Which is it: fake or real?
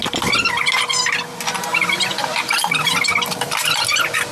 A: real